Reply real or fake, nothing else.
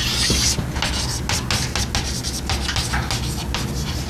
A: real